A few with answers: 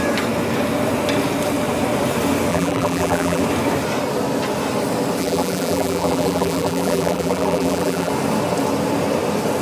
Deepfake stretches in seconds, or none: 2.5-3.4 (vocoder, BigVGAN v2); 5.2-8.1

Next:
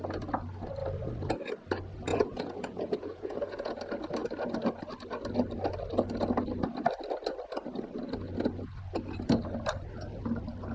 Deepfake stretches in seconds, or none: 2.1-3.8 (vocoder, Vocos)